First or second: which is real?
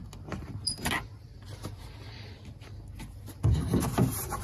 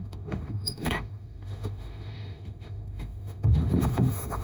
first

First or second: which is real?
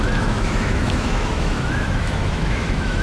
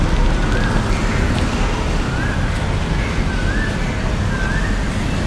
second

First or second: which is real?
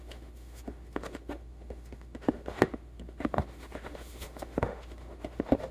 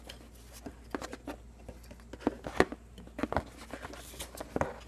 second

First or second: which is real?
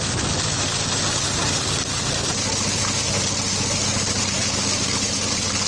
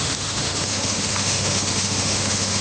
first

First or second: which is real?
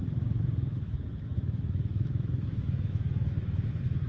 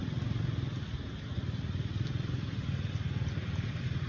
second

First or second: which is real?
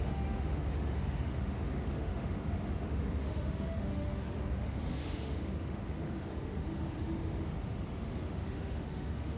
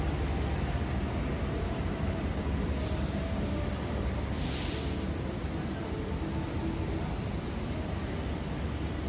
second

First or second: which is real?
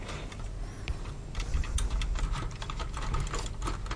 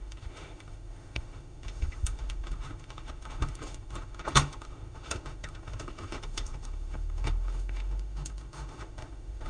first